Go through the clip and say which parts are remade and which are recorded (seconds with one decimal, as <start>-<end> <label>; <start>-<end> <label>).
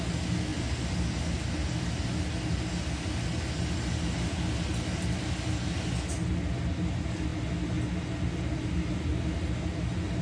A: 0.0-10.2 recorded